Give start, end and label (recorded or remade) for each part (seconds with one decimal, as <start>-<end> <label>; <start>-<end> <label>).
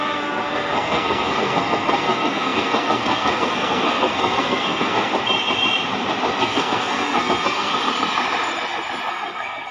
0.0-5.1 remade; 5.1-6.4 recorded; 6.4-7.7 remade; 7.7-9.1 recorded; 9.1-9.7 remade